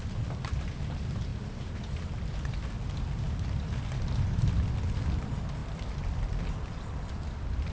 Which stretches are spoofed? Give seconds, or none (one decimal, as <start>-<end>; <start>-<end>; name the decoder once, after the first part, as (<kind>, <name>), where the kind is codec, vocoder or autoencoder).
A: 1.3-2.3 (vocoder, BigVGAN v2)